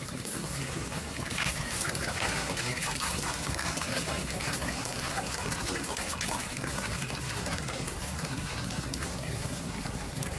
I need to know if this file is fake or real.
fake